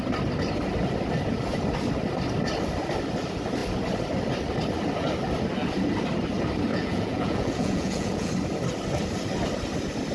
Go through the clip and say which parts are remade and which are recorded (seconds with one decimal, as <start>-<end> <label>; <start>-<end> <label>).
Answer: 0.0-6.7 recorded; 6.7-8.3 remade; 8.3-10.1 recorded